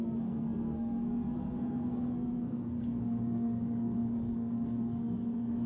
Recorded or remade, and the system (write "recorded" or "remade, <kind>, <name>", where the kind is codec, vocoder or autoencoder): remade, codec, SNAC